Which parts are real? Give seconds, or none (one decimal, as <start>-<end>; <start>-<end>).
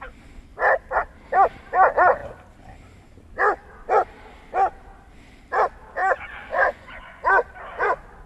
0.0-6.0; 7.2-8.3